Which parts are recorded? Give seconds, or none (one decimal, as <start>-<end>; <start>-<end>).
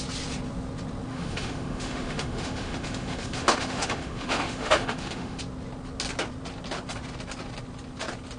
0.0-1.1; 5.4-8.4